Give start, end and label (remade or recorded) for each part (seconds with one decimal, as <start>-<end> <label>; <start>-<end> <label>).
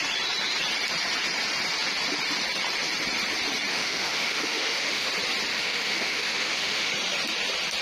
0.0-3.7 recorded; 3.7-5.1 remade; 5.1-5.5 recorded; 5.5-6.9 remade; 6.9-7.8 recorded